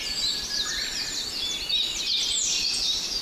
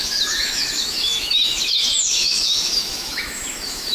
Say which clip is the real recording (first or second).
first